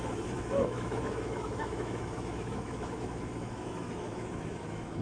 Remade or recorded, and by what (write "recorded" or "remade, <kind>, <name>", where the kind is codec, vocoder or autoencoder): remade, autoencoder, DAC-VAE